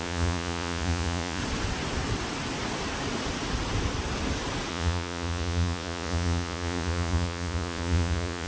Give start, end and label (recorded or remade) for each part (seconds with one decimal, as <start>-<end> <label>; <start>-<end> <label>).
0.0-1.4 remade; 1.4-4.7 recorded; 4.7-8.5 remade